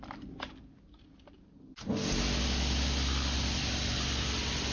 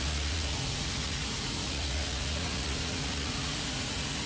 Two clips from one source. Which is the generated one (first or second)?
second